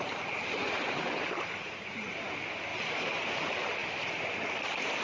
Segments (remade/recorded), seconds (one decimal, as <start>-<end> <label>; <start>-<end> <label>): 0.0-0.6 recorded; 0.6-2.3 remade; 2.3-5.0 recorded